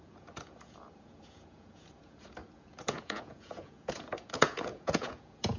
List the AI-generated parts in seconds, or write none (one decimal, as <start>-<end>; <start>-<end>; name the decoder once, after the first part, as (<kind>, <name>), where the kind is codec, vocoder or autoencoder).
0.0-5.6 (vocoder, Vocos)